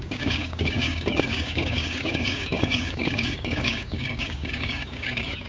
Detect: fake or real fake